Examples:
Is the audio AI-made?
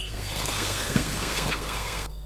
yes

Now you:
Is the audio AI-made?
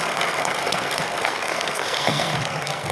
yes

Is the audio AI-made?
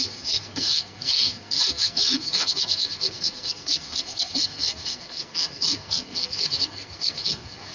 yes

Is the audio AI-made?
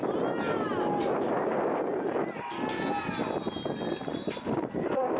no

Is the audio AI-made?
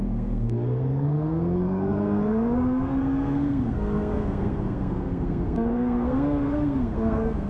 yes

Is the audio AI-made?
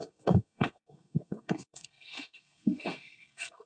yes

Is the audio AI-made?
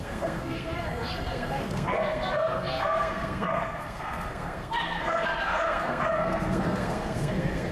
yes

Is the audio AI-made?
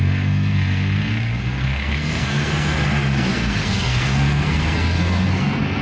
yes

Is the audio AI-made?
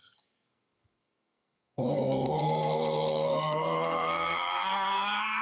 yes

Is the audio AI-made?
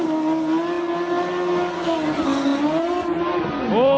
no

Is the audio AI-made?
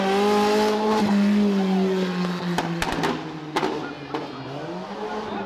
no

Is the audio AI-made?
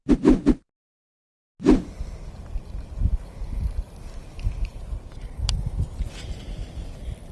no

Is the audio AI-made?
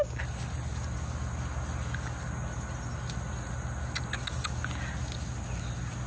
no